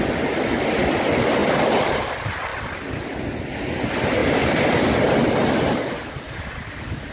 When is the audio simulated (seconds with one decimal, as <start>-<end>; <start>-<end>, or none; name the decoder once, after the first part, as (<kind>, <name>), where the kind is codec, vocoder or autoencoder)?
1.4-2.0 (vocoder, BigVGAN v2)